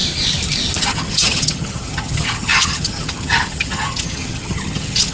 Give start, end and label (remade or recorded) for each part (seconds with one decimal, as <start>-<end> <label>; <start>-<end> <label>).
0.0-0.8 recorded; 0.8-5.1 remade